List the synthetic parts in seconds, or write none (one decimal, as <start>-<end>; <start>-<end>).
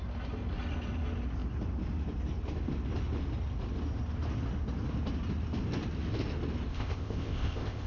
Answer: 6.7-7.9